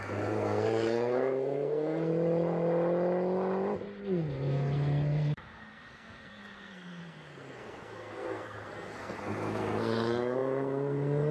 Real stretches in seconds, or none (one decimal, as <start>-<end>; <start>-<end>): 2.1-4.0